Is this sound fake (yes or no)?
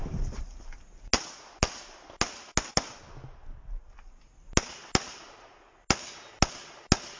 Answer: no